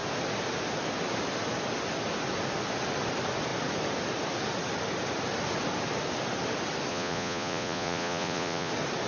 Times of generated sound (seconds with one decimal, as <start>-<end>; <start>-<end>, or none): 6.9-8.7